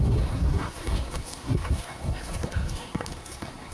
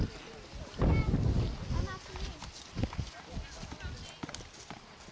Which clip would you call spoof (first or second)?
first